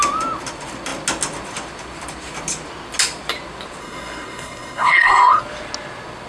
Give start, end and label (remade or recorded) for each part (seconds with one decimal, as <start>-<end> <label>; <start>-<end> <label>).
0.0-3.8 recorded; 3.8-5.4 remade; 5.4-6.3 recorded